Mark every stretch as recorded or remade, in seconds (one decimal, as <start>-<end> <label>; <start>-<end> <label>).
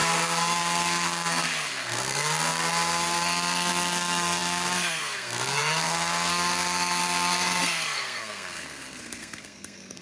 0.0-10.0 remade